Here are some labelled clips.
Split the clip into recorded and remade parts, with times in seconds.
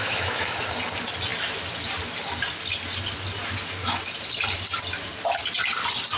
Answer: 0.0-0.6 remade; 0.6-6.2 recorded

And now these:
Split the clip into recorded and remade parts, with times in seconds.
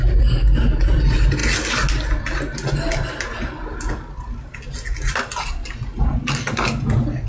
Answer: 0.0-7.3 recorded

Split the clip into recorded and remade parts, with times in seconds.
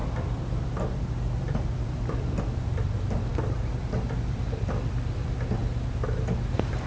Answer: 0.0-5.6 remade; 5.6-6.4 recorded; 6.4-6.9 remade